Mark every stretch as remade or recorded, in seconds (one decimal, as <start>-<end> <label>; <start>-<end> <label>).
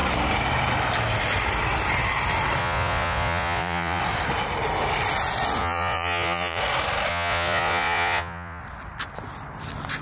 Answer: 0.0-2.6 recorded; 2.6-4.0 remade; 4.0-5.6 recorded; 5.6-6.6 remade; 6.6-7.1 recorded; 7.1-8.6 remade; 8.6-10.0 recorded